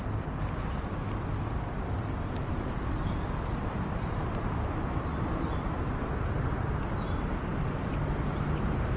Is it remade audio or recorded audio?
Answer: remade